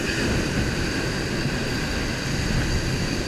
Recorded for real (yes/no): yes